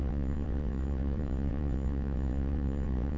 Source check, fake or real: fake